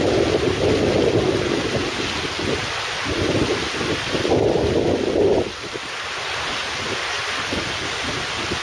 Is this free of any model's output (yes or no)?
yes